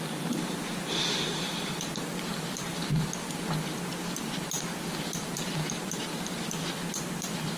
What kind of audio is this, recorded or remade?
recorded